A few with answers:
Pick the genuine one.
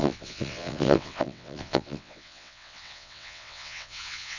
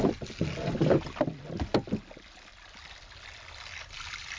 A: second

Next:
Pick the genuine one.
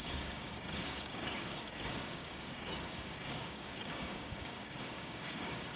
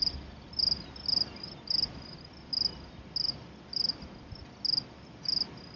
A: second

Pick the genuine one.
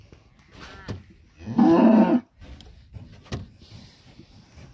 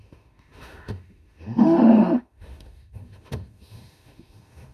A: first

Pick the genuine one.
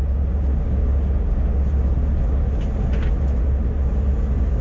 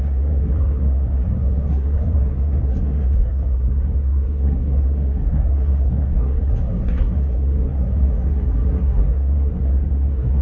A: first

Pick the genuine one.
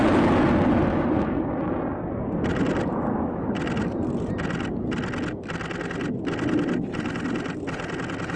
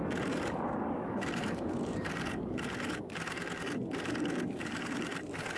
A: first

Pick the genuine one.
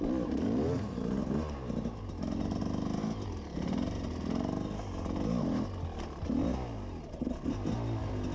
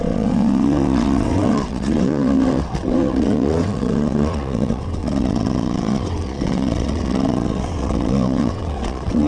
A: first